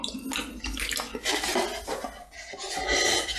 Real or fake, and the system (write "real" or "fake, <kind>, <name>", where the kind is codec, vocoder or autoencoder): real